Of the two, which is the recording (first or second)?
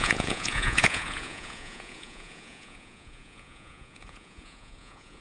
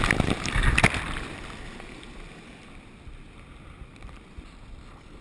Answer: second